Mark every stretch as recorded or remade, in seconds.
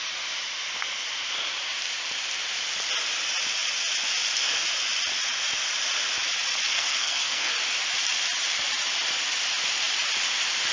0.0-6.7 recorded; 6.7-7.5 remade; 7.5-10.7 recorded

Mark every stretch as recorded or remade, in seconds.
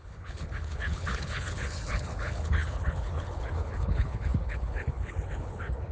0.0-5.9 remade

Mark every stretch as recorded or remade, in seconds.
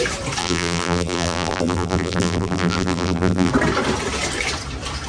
0.0-0.4 recorded; 0.4-3.5 remade; 3.5-5.1 recorded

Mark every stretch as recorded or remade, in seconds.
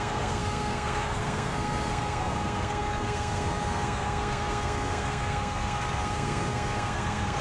0.0-7.4 remade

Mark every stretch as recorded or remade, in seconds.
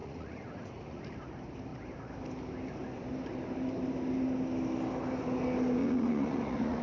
0.0-1.0 remade; 1.0-5.8 recorded; 5.8-6.8 remade